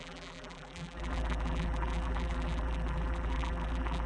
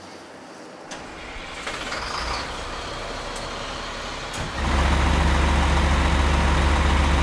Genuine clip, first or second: second